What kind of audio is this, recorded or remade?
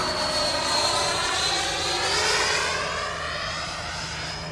recorded